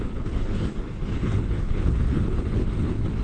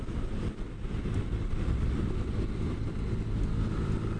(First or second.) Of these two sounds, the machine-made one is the first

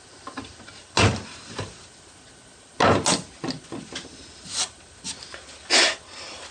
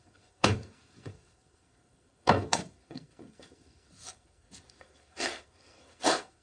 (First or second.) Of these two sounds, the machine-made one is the second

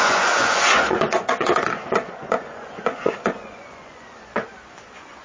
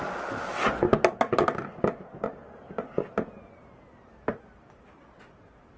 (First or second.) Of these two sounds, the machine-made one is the first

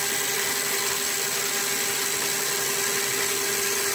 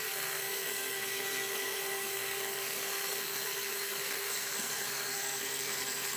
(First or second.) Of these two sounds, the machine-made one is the second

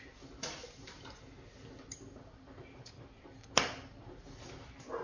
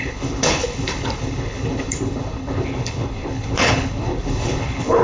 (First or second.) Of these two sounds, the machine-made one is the second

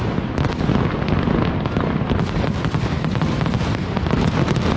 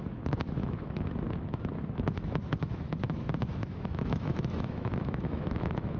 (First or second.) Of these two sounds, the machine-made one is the second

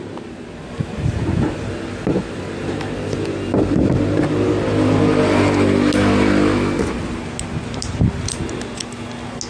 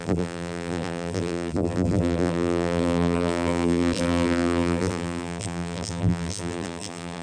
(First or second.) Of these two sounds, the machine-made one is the second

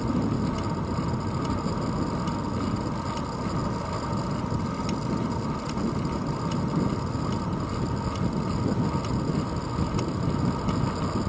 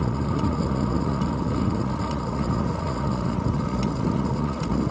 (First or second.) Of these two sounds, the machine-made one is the second